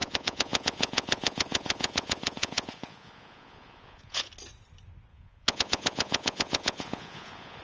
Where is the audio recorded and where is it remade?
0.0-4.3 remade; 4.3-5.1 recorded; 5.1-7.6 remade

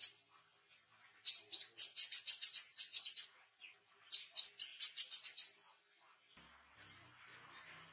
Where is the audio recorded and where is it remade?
0.0-2.9 recorded; 2.9-3.6 remade; 3.6-7.9 recorded

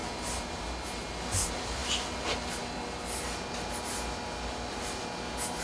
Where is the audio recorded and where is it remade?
0.0-5.6 recorded